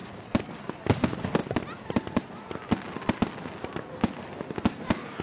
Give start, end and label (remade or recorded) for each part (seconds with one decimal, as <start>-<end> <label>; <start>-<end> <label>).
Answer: 0.0-5.2 recorded